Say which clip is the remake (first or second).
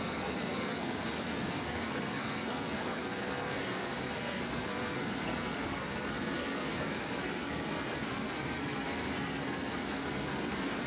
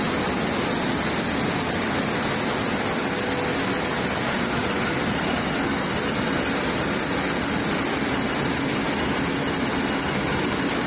first